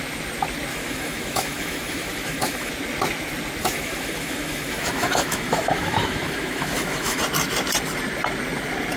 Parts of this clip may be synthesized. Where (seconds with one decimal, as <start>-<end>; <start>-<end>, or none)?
0.7-2.7; 3.6-7.2